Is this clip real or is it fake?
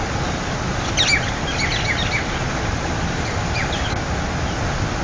real